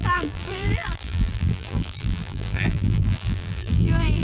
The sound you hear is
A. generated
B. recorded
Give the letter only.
A